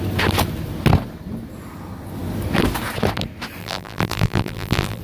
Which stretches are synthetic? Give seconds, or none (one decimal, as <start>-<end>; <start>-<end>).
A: 3.6-5.0